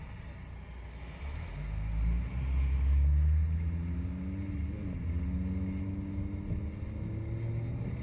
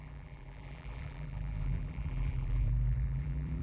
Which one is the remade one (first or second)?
second